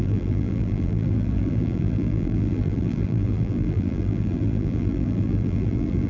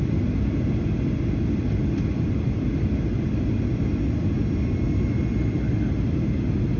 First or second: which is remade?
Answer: first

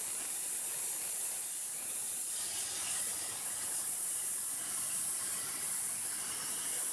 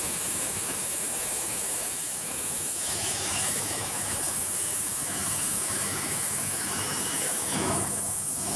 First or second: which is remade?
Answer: second